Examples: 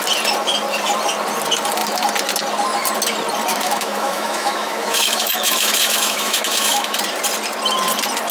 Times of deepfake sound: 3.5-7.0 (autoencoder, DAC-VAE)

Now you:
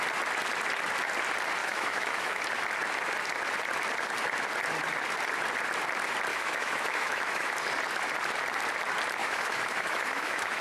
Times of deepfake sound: 1.6-2.4 (autoencoder, DAC-VAE); 6.3-7.5; 9.2-10.6

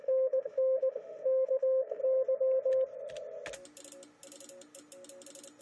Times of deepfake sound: 0.0-2.0 (autoencoder, DAC-VAE)

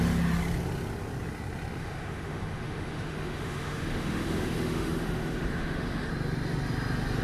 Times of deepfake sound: 1.8-6.1 (autoencoder, DAC-VAE)

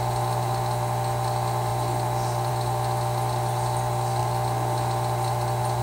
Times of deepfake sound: none

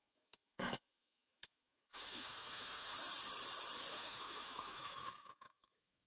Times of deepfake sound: 0.0-2.9 (autoencoder, DAC-VAE); 3.9-6.1

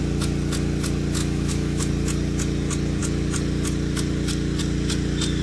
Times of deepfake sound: 1.2-1.9 (autoencoder, DAC-VAE)